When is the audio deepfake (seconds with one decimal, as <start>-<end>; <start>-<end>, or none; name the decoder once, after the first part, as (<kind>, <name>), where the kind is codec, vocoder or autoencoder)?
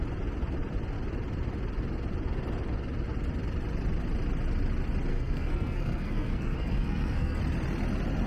5.1-7.4 (codec, SNAC)